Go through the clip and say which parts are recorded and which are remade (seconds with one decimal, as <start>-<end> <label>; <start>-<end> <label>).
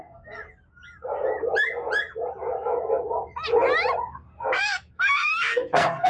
0.0-0.4 remade; 0.4-4.1 recorded; 4.1-6.1 remade